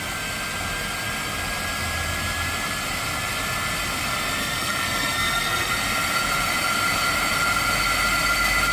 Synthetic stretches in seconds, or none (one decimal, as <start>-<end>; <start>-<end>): 4.4-5.7